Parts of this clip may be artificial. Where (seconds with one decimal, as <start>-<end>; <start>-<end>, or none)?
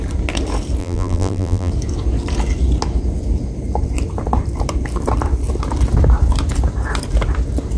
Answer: 0.8-1.7